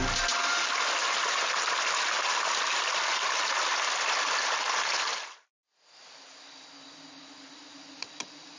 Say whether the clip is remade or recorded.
recorded